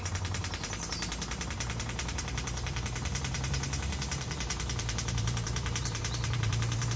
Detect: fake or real fake